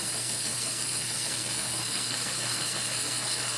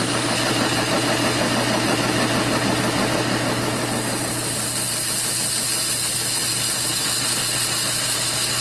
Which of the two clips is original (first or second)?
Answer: second